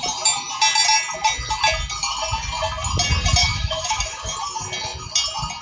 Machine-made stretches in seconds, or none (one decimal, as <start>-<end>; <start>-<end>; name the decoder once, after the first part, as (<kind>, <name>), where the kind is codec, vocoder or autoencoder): 3.4-4.2 (autoencoder, DAC-VAE)